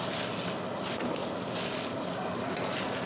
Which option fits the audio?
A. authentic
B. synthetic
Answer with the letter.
A